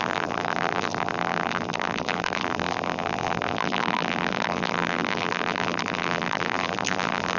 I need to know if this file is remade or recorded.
remade